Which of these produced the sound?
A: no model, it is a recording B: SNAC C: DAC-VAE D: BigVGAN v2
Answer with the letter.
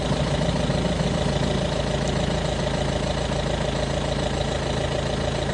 A